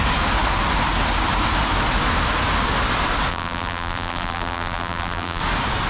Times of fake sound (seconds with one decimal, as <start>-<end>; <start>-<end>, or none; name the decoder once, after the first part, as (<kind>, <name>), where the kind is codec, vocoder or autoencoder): 3.3-5.4 (vocoder, BigVGAN v2)